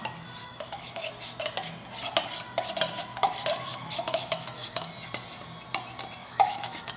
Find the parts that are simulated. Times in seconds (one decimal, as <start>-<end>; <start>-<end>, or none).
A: 0.4-1.1; 3.7-4.9; 6.2-7.0